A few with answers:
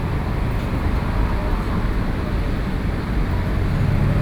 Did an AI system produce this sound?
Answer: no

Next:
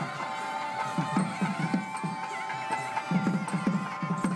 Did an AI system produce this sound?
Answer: no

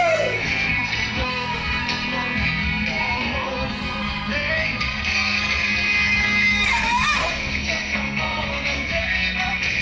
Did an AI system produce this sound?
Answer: yes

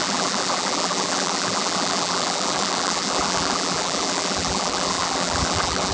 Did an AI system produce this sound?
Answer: yes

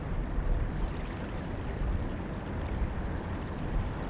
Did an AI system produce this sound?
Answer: no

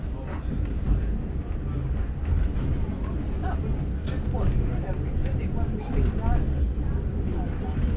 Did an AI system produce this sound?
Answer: no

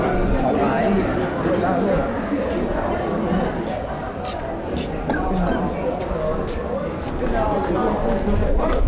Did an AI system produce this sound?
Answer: no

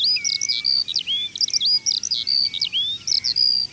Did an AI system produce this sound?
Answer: no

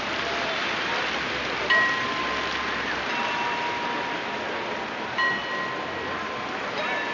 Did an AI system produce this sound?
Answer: no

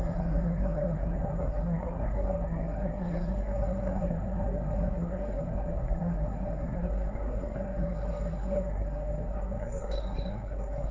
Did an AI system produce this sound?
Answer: yes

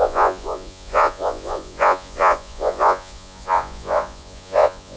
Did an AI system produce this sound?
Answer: yes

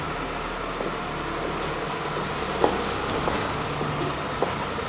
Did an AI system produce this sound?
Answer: no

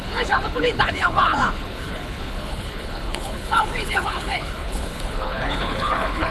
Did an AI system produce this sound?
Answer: yes